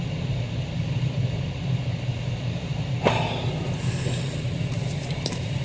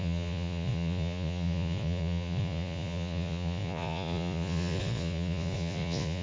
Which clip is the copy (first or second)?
second